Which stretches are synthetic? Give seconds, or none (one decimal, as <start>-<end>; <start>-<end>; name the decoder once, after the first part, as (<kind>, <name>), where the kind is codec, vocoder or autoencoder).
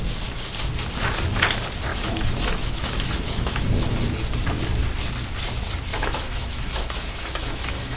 1.9-3.6 (autoencoder, DAC-VAE); 5.9-8.0